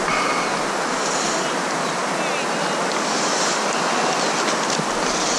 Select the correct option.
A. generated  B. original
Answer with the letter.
B